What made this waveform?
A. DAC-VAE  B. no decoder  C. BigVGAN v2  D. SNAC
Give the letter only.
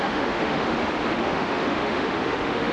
A